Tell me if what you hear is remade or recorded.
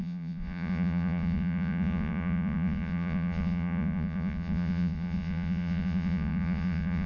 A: remade